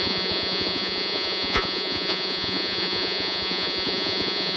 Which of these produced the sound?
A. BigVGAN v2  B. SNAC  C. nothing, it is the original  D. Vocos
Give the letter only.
D